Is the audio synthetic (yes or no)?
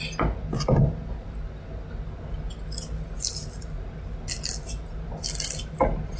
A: no